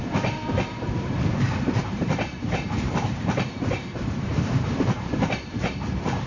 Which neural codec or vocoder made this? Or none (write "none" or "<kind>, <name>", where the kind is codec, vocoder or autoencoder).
vocoder, BigVGAN v2